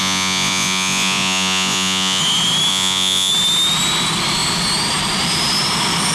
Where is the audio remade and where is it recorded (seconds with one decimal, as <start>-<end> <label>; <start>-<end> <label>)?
0.0-2.2 remade; 2.2-2.7 recorded; 2.7-3.3 remade; 3.3-6.1 recorded